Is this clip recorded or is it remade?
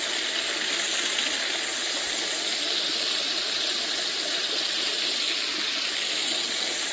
recorded